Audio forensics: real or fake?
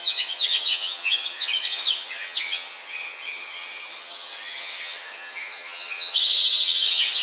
fake